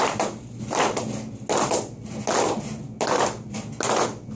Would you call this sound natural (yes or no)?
yes